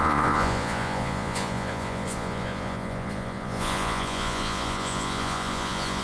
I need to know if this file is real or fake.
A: fake